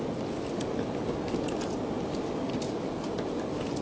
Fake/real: real